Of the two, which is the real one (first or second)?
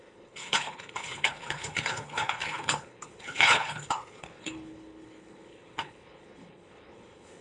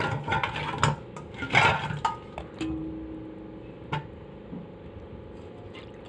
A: second